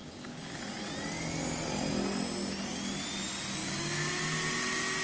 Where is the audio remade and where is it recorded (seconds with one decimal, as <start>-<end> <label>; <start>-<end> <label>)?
0.0-0.6 remade; 0.6-3.6 recorded; 3.6-4.1 remade; 4.1-5.0 recorded